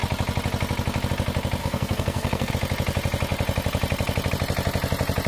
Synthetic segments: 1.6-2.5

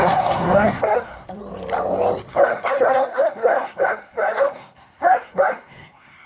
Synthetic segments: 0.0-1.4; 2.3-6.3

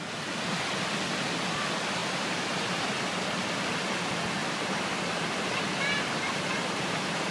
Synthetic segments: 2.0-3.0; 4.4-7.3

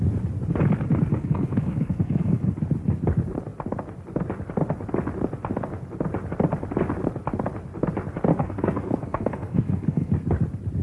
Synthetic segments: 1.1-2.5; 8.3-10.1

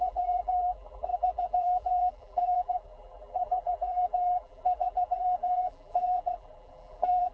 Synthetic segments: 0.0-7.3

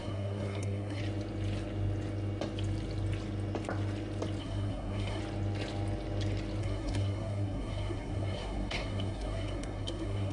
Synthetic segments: 0.0-1.0; 4.4-5.2; 6.6-10.3